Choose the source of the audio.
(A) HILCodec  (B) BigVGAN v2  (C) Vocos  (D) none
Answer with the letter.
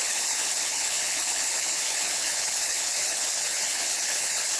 A